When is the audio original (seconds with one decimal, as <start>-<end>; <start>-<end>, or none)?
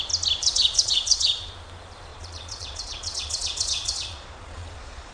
0.0-0.4; 1.5-2.1